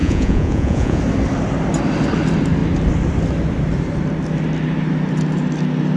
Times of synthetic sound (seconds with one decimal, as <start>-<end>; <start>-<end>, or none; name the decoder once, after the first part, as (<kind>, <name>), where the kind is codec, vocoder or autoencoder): 0.0-1.0 (vocoder, Vocos)